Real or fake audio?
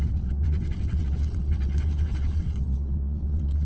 fake